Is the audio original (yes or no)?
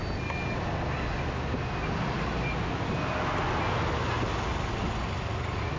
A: yes